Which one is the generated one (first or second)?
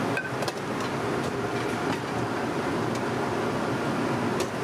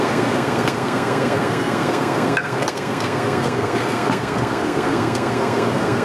second